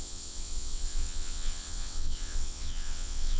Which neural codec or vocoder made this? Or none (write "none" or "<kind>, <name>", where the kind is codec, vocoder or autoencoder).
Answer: vocoder, WaveNeXt